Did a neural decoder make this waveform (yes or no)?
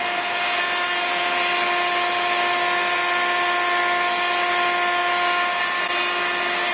no